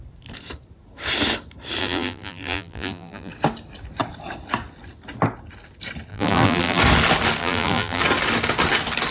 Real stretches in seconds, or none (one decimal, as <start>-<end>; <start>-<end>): 0.0-1.8; 3.3-6.1; 6.8-7.4; 8.0-9.1